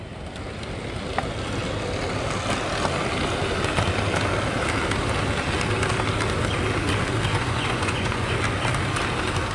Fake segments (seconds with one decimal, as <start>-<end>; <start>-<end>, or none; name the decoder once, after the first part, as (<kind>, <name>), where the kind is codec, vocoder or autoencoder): 7.3-8.3 (vocoder, Vocos)